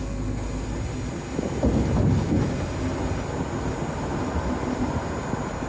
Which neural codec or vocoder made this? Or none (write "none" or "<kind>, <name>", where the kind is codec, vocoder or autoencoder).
none